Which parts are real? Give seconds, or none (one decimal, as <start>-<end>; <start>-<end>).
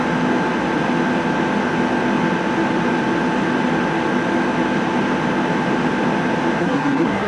0.0-6.6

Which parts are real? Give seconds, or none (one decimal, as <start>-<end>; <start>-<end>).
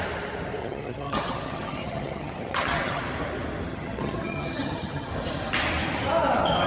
0.0-0.6; 3.0-3.7; 5.1-6.7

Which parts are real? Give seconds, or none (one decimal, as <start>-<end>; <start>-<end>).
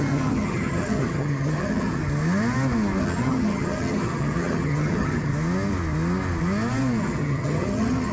2.0-3.0; 5.3-7.0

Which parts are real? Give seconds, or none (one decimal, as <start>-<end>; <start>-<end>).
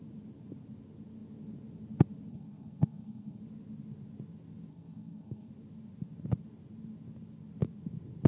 0.0-2.3; 3.4-4.7; 5.5-8.3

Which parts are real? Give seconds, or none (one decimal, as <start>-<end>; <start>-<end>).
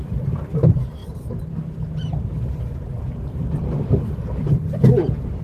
1.0-4.2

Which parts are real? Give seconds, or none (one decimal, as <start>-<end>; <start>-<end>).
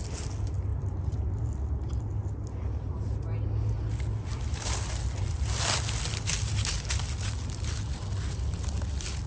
0.0-9.3